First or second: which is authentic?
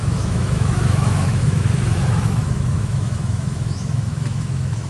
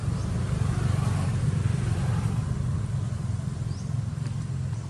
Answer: second